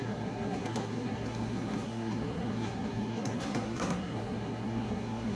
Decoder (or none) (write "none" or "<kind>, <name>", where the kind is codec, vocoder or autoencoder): codec, SNAC